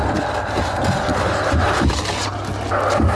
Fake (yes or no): no